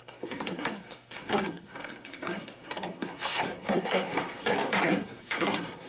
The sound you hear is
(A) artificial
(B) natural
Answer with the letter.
A